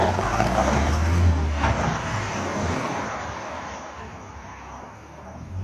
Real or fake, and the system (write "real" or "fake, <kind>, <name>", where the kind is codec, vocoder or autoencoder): fake, codec, DAC